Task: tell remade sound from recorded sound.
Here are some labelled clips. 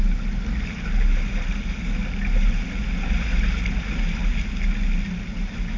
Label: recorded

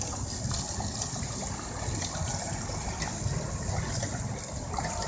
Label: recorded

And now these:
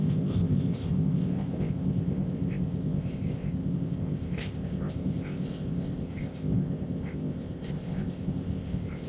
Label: remade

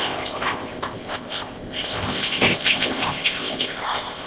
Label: remade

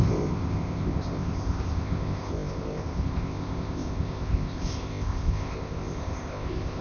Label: remade